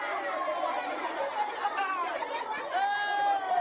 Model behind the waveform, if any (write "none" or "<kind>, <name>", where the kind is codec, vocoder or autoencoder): none